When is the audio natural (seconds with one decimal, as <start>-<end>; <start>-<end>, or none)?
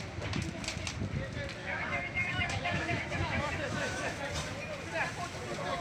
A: 0.0-1.6; 4.2-5.8